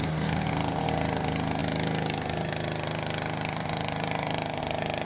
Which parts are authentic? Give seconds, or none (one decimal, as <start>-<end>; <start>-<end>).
0.0-5.0